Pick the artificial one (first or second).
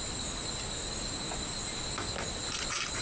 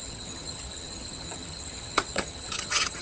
second